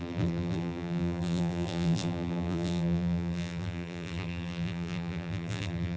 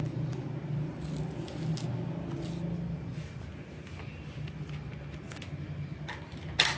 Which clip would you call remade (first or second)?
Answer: first